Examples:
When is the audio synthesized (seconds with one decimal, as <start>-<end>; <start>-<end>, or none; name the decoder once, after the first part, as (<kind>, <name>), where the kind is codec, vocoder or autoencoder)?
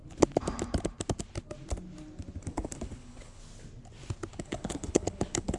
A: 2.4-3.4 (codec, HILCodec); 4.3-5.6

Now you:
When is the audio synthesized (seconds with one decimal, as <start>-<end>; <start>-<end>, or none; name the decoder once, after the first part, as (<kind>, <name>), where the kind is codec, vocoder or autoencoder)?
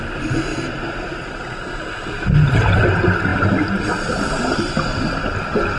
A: none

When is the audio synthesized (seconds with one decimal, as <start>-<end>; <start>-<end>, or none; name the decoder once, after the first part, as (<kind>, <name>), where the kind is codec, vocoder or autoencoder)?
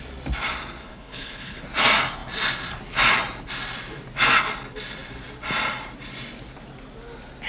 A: 0.8-1.6 (codec, HILCodec)